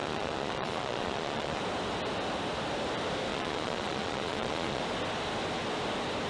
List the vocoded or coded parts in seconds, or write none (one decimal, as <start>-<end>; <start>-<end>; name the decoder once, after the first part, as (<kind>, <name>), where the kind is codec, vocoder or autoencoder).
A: 0.0-1.6 (vocoder, Vocos); 3.3-4.8